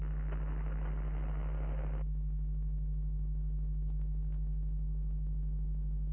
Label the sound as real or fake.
real